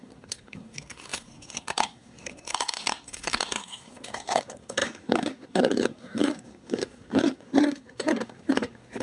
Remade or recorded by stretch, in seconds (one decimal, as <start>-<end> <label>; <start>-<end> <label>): 0.0-9.0 remade